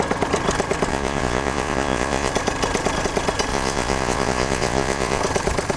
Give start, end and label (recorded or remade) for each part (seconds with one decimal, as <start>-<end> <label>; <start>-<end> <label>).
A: 0.0-0.9 recorded; 0.9-2.3 remade; 2.3-3.5 recorded; 3.5-5.2 remade; 5.2-5.8 recorded